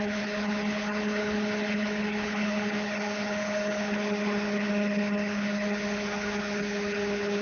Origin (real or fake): fake